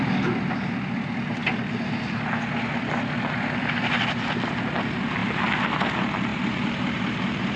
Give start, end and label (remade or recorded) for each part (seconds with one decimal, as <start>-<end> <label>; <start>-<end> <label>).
0.0-6.3 recorded; 6.3-7.6 remade